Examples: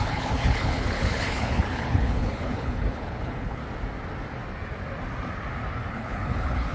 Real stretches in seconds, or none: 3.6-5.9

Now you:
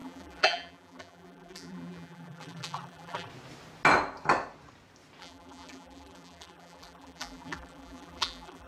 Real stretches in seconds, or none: 3.3-5.2